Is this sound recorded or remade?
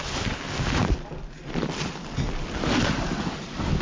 recorded